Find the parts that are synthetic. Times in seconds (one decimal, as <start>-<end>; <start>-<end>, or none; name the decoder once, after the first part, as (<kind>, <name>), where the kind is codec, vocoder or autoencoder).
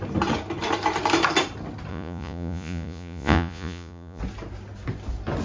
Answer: 1.9-4.2 (vocoder, Vocos)